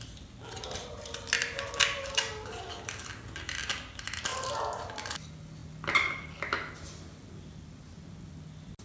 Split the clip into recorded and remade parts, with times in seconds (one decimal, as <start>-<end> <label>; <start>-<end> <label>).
0.0-4.3 recorded; 4.3-5.1 remade; 5.1-5.6 recorded; 5.6-8.3 remade; 8.3-8.8 recorded